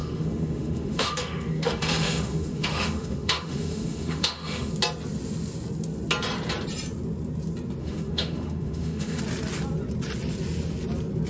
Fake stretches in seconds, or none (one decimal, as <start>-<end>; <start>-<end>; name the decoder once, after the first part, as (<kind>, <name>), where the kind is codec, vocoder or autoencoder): 0.0-4.7 (autoencoder, DAC-VAE); 7.8-9.2